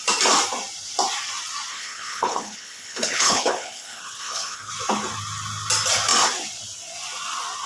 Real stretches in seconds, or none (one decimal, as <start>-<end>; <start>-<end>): 0.0-1.7; 4.7-7.7